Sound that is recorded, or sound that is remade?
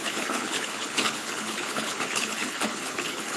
remade